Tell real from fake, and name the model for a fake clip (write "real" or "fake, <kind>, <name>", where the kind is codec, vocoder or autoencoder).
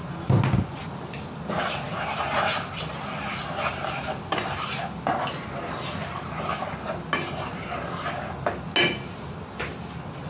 real